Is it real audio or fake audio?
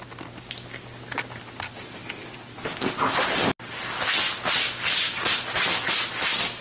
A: real